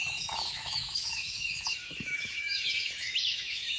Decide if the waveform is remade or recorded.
remade